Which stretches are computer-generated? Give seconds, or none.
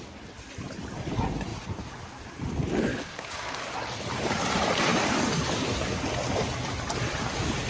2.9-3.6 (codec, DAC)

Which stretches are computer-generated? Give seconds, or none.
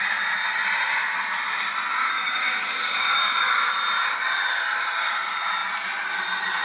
2.0-3.7 (codec, DAC)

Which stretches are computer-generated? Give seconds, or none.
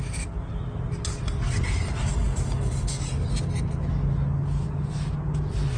2.1-3.1 (codec, DAC)